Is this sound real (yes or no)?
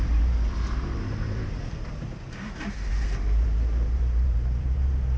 no